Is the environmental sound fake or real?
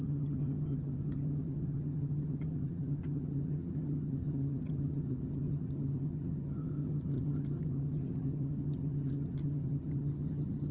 fake